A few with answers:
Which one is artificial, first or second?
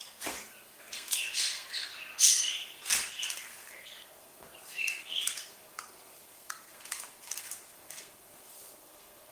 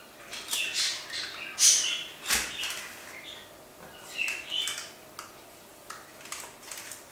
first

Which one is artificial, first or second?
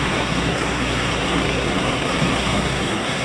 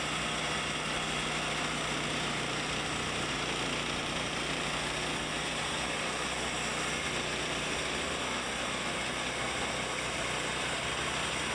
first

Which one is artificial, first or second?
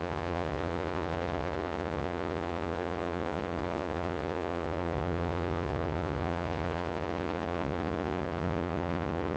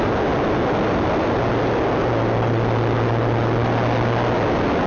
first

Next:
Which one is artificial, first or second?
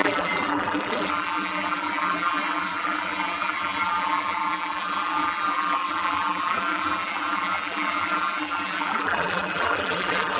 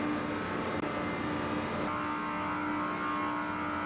first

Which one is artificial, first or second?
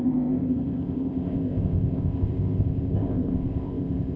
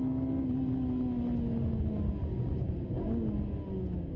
first